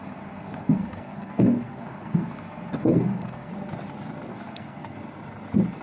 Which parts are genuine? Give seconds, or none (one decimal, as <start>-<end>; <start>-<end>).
3.5-4.3; 5.0-5.8